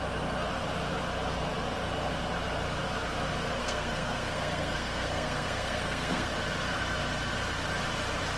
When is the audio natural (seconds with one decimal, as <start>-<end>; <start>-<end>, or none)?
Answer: 0.0-3.6; 6.3-8.4